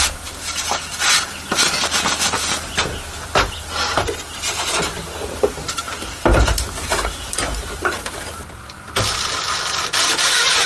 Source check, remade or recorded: recorded